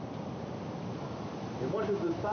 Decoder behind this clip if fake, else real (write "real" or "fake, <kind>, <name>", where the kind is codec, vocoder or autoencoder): fake, vocoder, BigVGAN v2